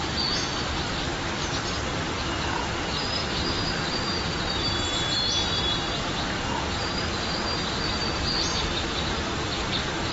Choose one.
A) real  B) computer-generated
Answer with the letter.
A